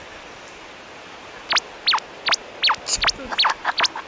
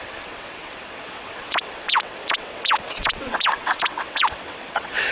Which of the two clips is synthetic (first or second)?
second